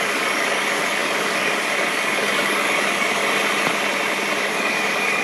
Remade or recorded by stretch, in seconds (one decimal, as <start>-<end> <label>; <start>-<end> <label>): 0.0-3.2 remade; 3.2-4.4 recorded; 4.4-5.2 remade